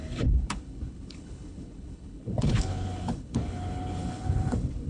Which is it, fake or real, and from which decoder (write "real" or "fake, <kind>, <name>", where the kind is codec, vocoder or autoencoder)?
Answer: fake, codec, HILCodec